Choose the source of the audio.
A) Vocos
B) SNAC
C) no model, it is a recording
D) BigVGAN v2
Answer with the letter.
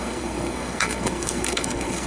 B